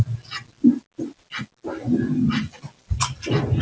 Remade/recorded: recorded